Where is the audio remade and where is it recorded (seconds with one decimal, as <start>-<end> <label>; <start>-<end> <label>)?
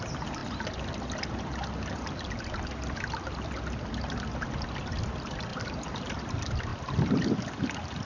0.0-5.5 recorded; 5.5-6.2 remade; 6.2-8.0 recorded